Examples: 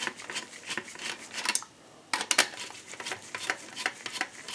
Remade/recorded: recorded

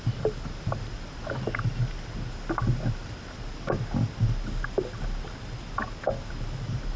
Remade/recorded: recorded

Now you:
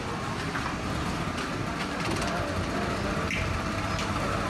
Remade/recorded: recorded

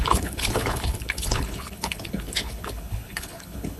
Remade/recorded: remade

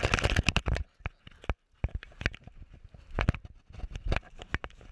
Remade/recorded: recorded